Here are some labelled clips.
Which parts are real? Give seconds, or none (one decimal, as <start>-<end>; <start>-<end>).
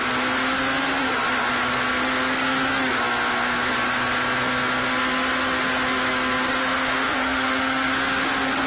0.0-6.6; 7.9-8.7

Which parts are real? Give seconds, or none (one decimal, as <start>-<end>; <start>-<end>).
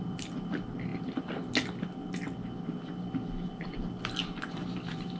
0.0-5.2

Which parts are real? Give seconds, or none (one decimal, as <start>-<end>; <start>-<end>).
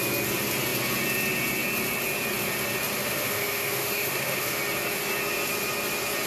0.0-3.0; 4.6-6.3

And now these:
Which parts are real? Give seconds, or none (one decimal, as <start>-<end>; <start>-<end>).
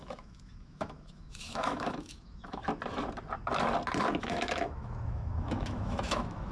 2.6-4.2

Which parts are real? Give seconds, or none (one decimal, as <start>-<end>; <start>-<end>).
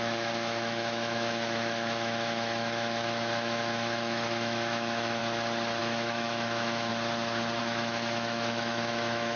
5.2-5.8; 6.9-7.6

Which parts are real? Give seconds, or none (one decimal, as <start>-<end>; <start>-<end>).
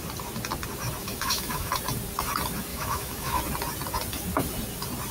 0.0-1.0; 1.7-2.7; 3.4-5.1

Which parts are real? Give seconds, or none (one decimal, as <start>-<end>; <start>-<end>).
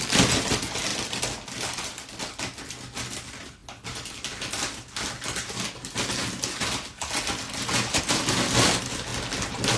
0.0-9.8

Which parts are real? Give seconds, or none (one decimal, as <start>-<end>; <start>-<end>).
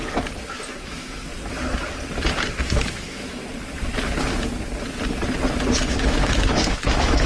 0.0-0.7; 1.3-2.6; 3.4-5.7